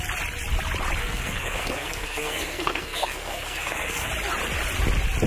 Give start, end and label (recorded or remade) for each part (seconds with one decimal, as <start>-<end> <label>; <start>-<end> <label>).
0.0-1.0 recorded; 1.0-4.1 remade; 4.1-5.3 recorded